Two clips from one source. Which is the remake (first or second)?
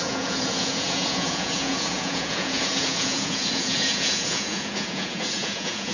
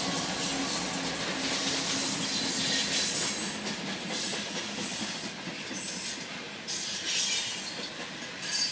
first